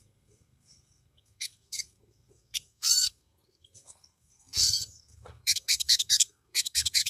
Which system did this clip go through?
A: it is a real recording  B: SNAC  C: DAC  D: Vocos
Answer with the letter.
B